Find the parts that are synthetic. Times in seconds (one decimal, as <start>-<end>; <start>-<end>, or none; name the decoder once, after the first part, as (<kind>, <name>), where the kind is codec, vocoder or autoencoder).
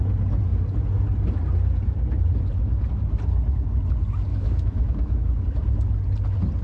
4.3-5.3 (autoencoder, DAC-VAE)